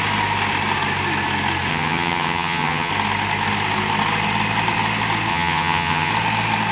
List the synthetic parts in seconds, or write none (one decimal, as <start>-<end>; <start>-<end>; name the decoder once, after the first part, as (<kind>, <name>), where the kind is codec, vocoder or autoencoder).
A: 1.7-2.9 (vocoder, HiFi-GAN); 5.3-6.1

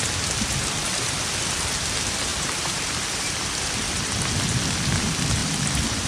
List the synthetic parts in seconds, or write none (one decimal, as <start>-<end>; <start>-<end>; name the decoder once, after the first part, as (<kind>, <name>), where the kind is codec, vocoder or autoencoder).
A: 2.3-3.3 (vocoder, BigVGAN v2)

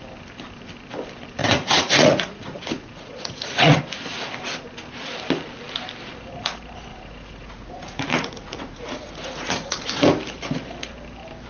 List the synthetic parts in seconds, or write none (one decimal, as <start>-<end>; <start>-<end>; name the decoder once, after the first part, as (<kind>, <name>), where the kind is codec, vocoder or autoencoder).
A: 1.4-3.8 (vocoder, Vocos); 6.9-9.9

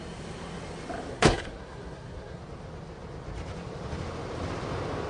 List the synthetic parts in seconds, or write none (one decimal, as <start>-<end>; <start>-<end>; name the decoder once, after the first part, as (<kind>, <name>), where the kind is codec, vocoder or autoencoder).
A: 1.1-2.4 (codec, SNAC)

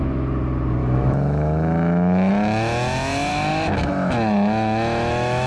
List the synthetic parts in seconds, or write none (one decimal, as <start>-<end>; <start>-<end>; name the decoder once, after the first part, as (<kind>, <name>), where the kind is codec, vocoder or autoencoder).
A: 0.8-2.3 (autoencoder, DAC-VAE); 3.3-5.5